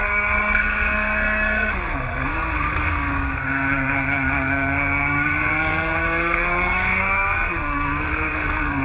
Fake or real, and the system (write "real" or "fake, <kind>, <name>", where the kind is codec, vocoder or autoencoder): fake, codec, SNAC